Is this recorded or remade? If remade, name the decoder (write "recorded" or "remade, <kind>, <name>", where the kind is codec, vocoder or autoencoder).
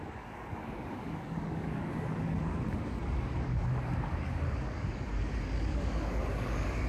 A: remade, codec, DAC